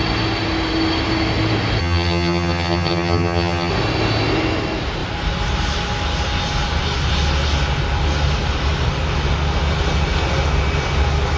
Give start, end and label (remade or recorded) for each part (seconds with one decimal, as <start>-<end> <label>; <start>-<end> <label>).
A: 0.0-1.8 recorded; 1.8-3.7 remade; 3.7-11.4 recorded